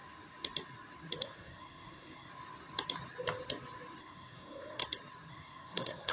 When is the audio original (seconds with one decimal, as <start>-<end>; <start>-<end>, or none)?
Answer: 0.0-1.2; 2.3-4.0; 4.8-5.3